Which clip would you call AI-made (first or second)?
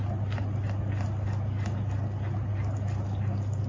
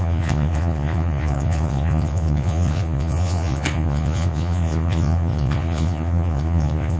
second